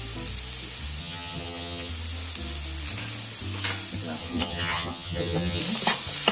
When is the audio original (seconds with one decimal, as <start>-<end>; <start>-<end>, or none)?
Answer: 0.0-1.0; 1.9-4.2; 5.6-6.3